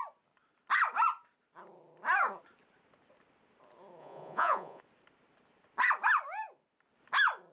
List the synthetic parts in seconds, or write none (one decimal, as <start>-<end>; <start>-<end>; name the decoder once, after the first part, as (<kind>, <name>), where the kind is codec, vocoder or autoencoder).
4.0-4.8 (vocoder, Vocos)